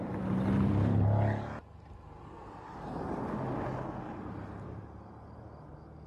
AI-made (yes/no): no